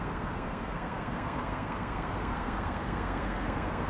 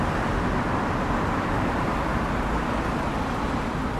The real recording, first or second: second